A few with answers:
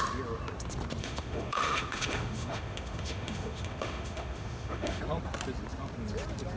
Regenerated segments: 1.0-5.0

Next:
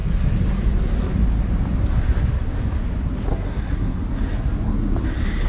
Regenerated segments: 3.3-4.0

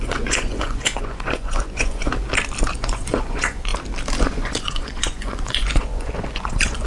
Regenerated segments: 0.0-2.1; 2.7-3.7; 4.2-6.9

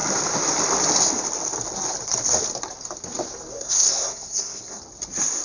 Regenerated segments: 3.5-4.8

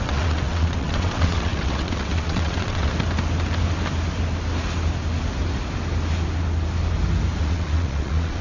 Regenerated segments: 0.0-2.9; 7.4-8.4

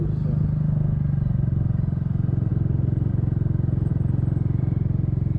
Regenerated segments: none